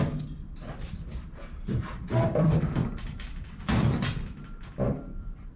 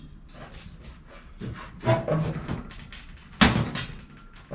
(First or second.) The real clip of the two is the second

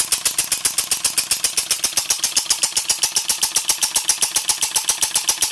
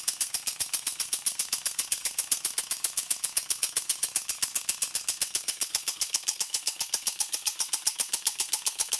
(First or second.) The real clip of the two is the first